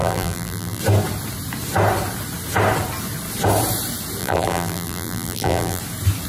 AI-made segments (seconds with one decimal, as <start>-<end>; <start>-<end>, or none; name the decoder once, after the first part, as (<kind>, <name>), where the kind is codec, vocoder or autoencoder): 0.0-0.8 (vocoder, BigVGAN v2); 4.2-5.8